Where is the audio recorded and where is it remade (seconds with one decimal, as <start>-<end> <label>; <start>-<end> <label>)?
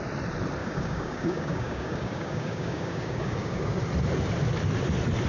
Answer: 0.0-0.6 recorded; 0.6-3.8 remade; 3.8-5.3 recorded